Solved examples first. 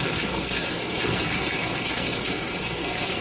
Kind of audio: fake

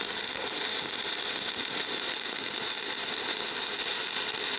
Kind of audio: fake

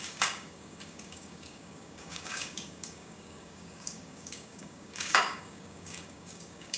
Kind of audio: fake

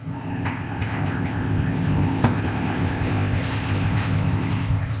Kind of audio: fake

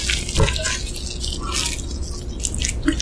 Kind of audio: real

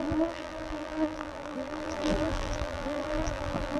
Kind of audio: fake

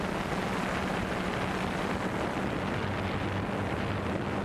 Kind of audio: real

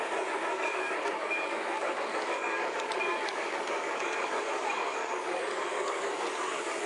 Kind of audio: fake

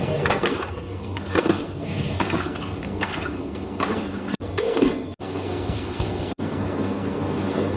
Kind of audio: fake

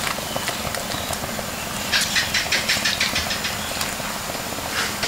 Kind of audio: real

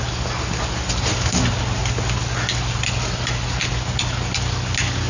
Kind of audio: real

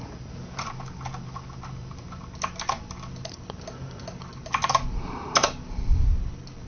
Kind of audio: real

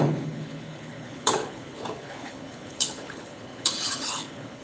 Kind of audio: fake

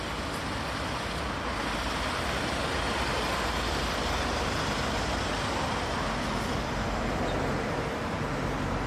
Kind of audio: real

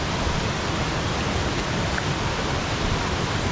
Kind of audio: real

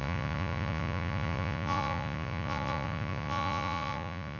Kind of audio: fake